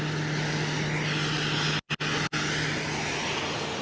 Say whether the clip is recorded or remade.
recorded